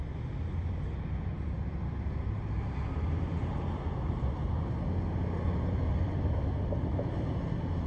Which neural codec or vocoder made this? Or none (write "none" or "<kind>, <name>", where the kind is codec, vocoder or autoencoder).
none